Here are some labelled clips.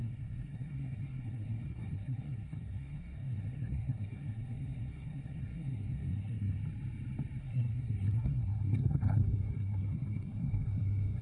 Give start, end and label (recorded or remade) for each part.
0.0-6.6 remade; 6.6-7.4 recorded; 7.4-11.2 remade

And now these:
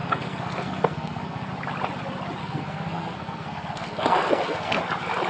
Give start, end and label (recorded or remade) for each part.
0.0-1.5 remade; 1.5-2.4 recorded; 2.4-4.8 remade; 4.8-5.3 recorded

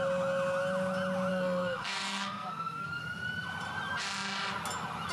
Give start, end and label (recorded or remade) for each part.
0.0-1.3 recorded; 1.3-3.0 remade; 3.0-5.1 recorded

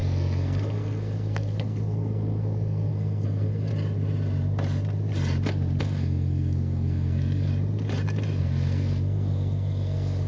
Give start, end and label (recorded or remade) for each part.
0.0-3.7 remade; 3.7-5.8 recorded; 5.8-7.5 remade; 7.5-8.4 recorded; 8.4-10.3 remade